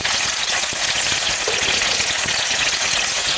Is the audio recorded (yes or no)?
no